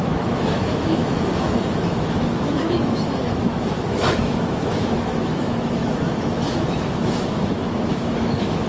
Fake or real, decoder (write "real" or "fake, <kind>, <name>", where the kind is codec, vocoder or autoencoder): fake, autoencoder, DAC-VAE